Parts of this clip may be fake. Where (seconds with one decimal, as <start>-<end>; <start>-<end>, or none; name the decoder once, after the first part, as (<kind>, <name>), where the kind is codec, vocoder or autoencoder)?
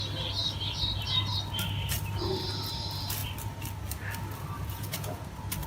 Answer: 4.6-5.3 (vocoder, Vocos)